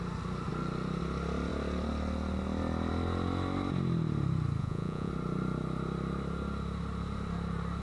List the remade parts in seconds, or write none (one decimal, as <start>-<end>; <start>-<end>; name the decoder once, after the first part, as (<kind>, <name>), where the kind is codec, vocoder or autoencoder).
4.6-5.1 (vocoder, Vocos)